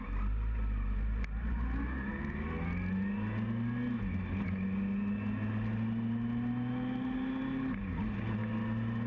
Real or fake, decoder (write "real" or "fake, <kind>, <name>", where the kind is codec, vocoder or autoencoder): real